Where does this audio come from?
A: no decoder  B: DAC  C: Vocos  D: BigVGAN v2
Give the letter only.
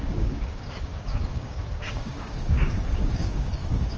B